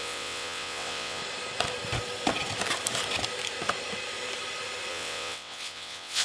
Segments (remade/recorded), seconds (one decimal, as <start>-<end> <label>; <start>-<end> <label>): 0.0-1.2 remade; 1.2-4.9 recorded; 4.9-6.2 remade